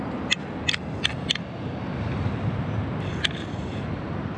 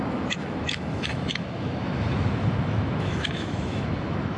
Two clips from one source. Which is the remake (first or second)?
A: second